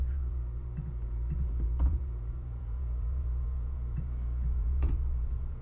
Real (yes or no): no